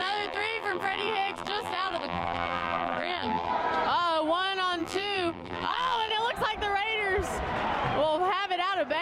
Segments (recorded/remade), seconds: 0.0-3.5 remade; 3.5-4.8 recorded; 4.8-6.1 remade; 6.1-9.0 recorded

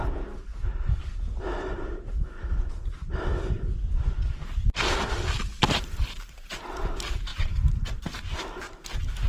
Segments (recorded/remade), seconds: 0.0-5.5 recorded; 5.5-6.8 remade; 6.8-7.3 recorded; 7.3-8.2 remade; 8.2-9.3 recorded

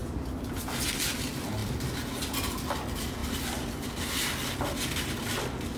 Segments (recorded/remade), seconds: 0.0-5.8 recorded

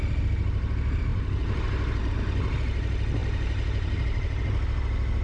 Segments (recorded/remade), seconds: 0.0-3.2 recorded; 3.2-4.4 remade; 4.4-5.2 recorded

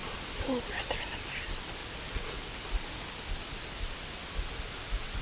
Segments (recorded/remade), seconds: 0.0-0.6 remade; 0.6-5.2 recorded

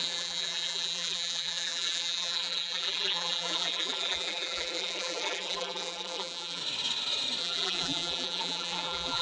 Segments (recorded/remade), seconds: 0.0-6.6 remade; 6.6-7.4 recorded; 7.4-9.2 remade

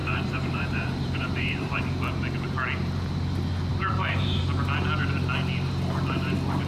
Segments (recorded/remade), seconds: 0.0-1.8 remade; 1.8-3.7 recorded; 3.7-4.4 remade; 4.4-6.7 recorded

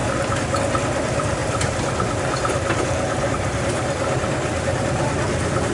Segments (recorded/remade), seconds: 0.0-1.4 recorded; 1.4-4.8 remade; 4.8-5.7 recorded